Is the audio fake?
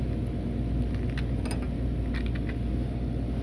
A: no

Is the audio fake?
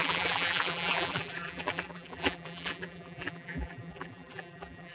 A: yes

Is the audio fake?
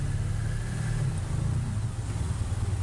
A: no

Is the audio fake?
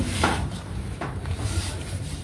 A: yes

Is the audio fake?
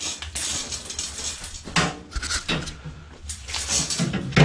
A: no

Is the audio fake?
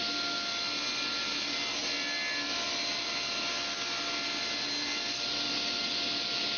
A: no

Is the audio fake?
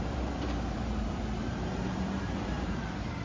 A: yes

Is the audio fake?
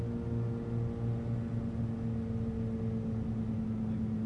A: no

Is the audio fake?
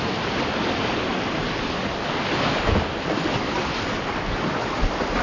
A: no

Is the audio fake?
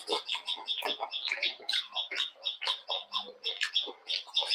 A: yes